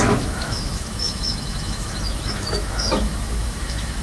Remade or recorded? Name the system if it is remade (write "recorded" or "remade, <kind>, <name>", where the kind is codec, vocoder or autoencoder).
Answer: remade, autoencoder, DAC-VAE